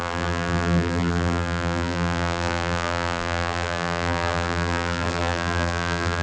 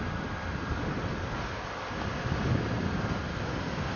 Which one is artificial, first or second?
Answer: first